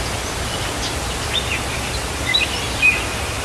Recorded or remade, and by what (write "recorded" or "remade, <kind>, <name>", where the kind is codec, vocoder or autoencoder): recorded